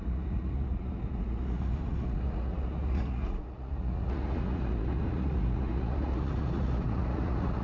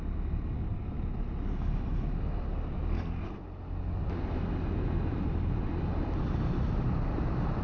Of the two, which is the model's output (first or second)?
first